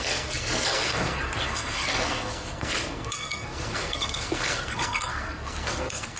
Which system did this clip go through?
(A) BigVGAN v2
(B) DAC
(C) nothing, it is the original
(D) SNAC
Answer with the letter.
D